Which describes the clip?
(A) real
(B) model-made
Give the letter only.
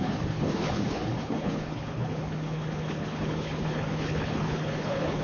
B